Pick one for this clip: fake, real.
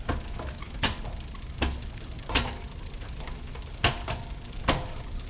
real